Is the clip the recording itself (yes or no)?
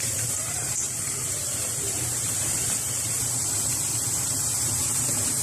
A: no